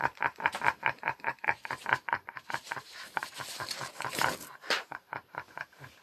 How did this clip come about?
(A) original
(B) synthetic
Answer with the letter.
B